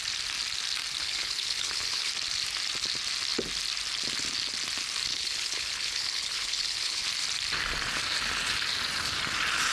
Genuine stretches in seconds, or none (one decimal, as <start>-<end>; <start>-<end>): 0.0-1.0; 2.1-5.1; 7.0-9.7